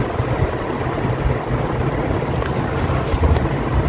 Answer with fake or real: real